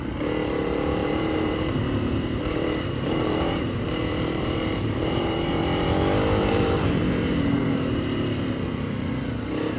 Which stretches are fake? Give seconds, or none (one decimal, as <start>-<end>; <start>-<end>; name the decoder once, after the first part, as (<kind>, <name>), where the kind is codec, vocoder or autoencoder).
1.0-5.6 (vocoder, BigVGAN v2); 6.4-9.2